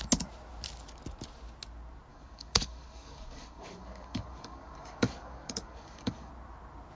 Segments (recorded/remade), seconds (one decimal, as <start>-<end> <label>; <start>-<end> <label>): 0.0-2.1 recorded; 2.1-6.3 remade; 6.3-7.0 recorded